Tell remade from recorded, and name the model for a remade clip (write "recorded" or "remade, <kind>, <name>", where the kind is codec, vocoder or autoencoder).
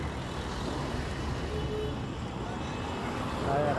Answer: recorded